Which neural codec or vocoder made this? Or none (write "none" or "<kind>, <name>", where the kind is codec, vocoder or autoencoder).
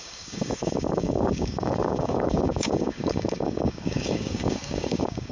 codec, DAC